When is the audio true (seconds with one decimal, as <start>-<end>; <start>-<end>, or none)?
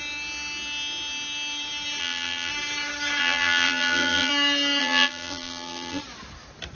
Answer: 0.0-2.0; 2.5-3.2; 4.3-4.8; 6.0-6.7